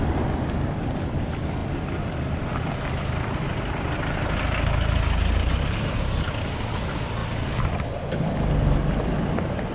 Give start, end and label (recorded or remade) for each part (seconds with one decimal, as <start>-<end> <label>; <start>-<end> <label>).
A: 0.0-9.7 recorded